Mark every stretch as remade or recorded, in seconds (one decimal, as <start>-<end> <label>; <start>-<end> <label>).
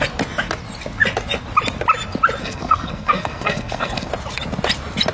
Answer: 0.0-2.4 recorded; 2.4-4.1 remade; 4.1-5.1 recorded